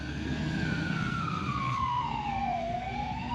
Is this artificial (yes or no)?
yes